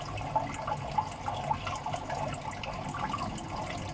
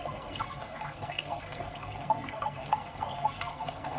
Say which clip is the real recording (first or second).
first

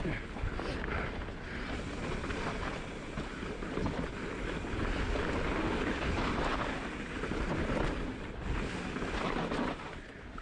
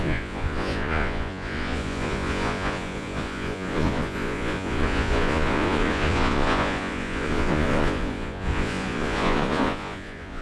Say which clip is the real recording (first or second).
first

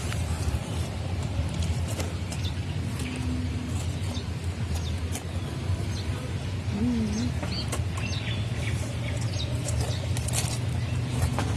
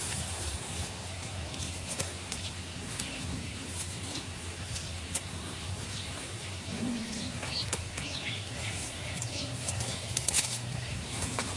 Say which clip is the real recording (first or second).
first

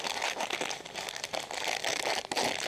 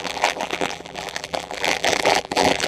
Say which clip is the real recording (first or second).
first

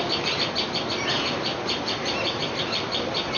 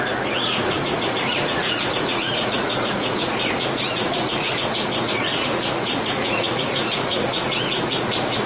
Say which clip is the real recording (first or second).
first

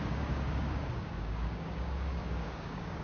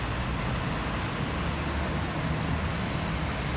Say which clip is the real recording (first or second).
second